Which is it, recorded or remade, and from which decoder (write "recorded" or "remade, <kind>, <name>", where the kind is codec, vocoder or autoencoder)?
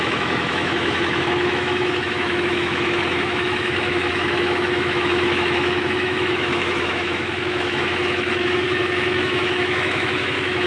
remade, autoencoder, DAC-VAE